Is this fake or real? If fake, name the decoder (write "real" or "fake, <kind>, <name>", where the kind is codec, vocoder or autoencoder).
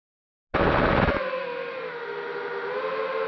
real